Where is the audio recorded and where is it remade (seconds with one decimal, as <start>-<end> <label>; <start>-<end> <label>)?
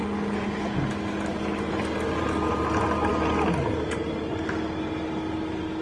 0.0-5.8 recorded